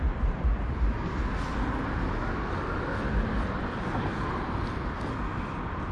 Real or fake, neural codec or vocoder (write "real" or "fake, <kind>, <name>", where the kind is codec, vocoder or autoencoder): real